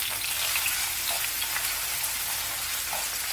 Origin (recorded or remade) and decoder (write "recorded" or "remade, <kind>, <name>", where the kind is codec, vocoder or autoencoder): recorded